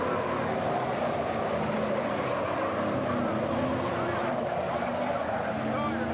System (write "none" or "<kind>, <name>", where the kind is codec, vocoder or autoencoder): none